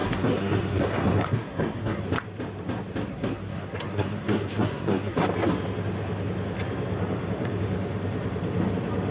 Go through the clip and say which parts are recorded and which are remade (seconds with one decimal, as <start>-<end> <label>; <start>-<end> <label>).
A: 0.0-2.0 remade; 2.0-3.1 recorded; 3.1-5.2 remade; 5.2-9.1 recorded